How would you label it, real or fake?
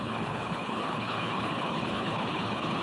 fake